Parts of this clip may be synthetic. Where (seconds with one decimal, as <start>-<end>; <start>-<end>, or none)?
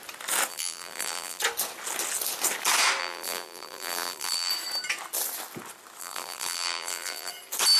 0.5-1.4; 3.0-4.5; 6.0-7.3